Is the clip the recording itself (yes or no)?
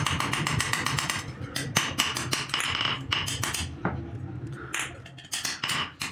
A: yes